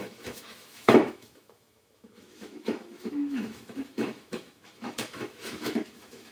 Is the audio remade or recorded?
remade